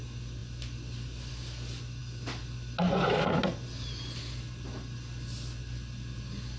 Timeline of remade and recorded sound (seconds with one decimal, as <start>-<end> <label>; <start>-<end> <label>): 0.0-6.6 recorded